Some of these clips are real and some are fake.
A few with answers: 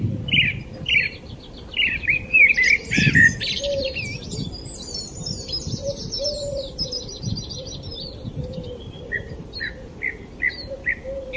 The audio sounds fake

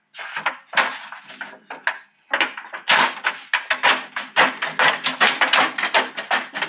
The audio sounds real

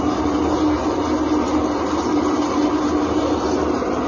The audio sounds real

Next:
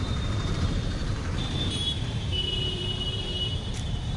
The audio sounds fake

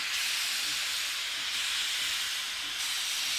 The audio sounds real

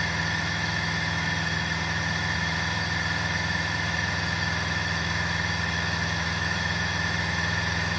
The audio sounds fake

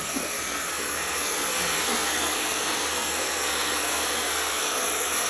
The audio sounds fake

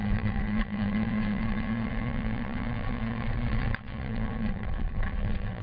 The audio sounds fake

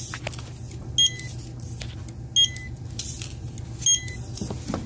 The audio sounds real